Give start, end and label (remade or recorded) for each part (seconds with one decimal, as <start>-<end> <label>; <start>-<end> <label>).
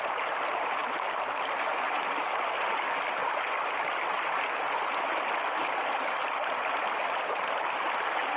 0.0-8.4 recorded